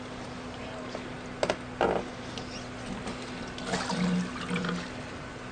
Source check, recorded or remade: recorded